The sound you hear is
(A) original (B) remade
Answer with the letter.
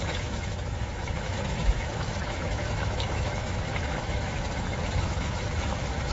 B